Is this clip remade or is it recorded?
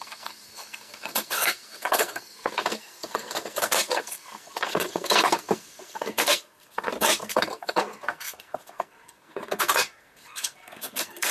remade